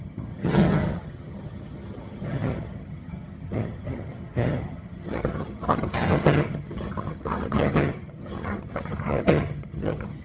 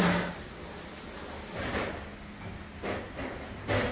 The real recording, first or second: second